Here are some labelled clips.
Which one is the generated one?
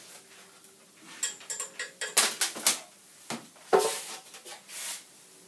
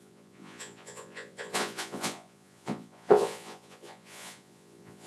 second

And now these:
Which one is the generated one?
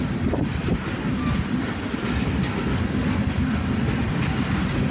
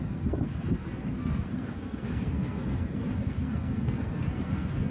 second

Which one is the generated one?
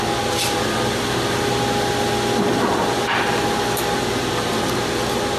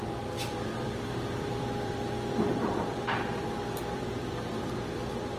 second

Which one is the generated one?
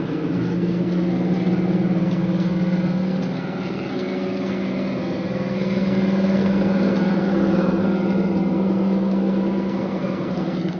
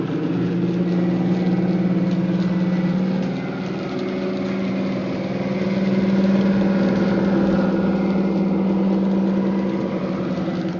first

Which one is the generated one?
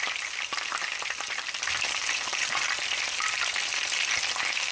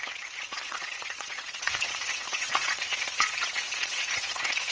second